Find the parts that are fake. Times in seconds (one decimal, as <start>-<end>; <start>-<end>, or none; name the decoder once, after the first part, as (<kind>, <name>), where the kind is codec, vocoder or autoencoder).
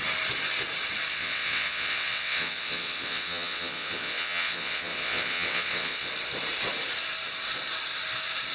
1.1-6.1 (vocoder, WaveNeXt)